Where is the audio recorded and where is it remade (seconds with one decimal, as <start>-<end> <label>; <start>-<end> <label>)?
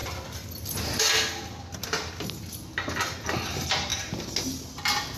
0.0-5.2 recorded